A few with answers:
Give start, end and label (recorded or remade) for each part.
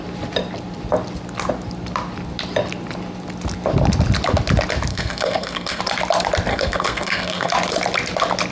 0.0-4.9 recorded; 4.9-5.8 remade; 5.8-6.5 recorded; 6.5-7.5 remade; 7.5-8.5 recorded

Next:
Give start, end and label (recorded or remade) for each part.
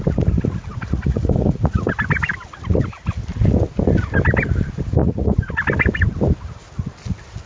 0.0-0.8 recorded; 0.8-1.9 remade; 1.9-5.0 recorded; 5.0-5.6 remade; 5.6-7.5 recorded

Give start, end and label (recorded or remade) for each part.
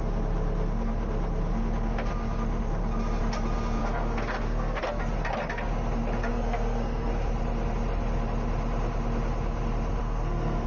0.0-3.8 recorded; 3.8-4.8 remade; 4.8-6.3 recorded; 6.3-7.1 remade; 7.1-10.0 recorded; 10.0-10.7 remade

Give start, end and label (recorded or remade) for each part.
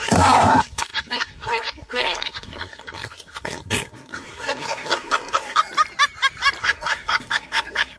0.0-5.6 remade; 5.6-6.6 recorded; 6.6-8.0 remade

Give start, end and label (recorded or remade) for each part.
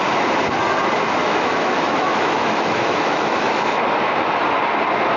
0.0-1.2 recorded; 1.2-4.3 remade; 4.3-5.2 recorded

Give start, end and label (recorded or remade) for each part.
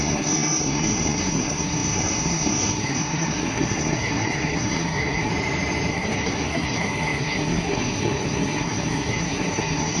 0.0-5.3 remade; 5.3-5.9 recorded; 5.9-10.0 remade